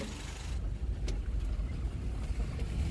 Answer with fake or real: real